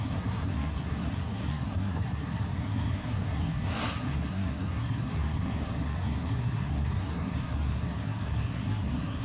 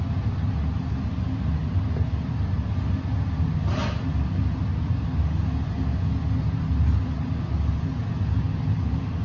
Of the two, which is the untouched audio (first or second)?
second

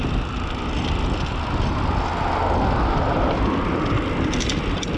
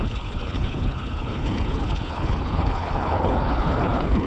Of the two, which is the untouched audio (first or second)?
first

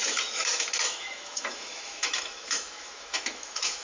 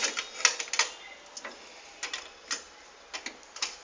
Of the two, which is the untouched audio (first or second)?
second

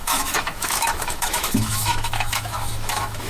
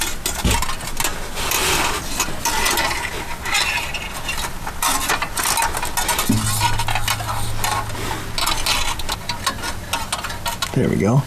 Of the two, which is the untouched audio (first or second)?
second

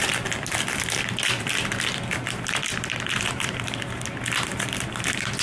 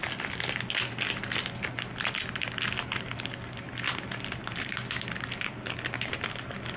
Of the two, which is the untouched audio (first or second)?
second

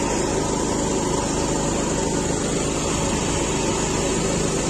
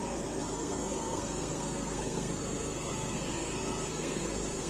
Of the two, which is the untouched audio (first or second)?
first